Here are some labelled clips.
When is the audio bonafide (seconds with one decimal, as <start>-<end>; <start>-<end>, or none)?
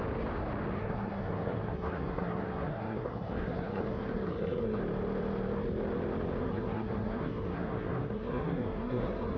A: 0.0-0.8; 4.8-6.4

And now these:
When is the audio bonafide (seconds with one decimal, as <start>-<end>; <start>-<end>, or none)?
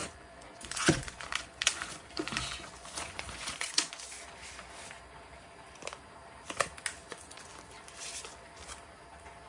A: 3.9-7.0; 7.5-9.5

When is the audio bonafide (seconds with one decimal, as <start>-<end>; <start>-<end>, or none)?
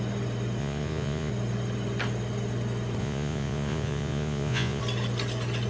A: 0.0-0.6; 1.3-3.0; 4.8-5.7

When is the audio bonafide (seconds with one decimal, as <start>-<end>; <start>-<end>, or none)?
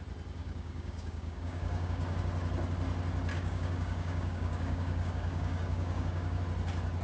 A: 0.0-0.4; 2.2-3.3; 6.4-7.0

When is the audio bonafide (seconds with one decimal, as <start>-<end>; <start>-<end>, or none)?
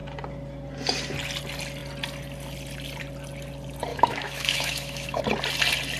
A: 0.0-3.9; 5.2-6.0